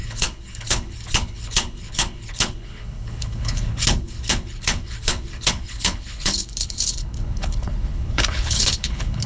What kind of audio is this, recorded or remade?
remade